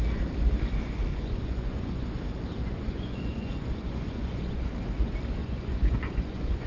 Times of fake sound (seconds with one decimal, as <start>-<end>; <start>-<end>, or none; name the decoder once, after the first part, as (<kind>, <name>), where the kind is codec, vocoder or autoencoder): 1.1-2.2 (vocoder, Vocos); 2.6-4.7; 5.4-6.7